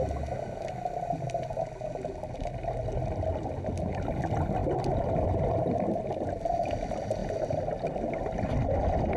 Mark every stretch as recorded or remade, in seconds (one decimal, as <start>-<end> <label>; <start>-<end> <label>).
0.0-4.6 recorded; 4.6-6.7 remade; 6.7-9.2 recorded